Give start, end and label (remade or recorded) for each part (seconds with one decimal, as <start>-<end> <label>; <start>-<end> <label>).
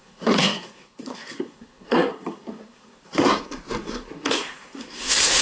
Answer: 0.0-5.4 remade